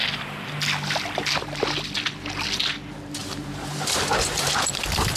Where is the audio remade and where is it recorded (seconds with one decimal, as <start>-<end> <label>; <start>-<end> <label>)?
0.0-3.2 recorded; 3.2-4.8 remade; 4.8-5.2 recorded